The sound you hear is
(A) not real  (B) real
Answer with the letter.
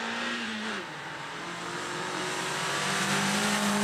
A